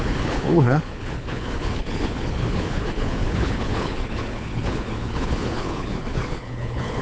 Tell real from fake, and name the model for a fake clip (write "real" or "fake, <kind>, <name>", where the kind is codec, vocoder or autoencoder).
fake, codec, HILCodec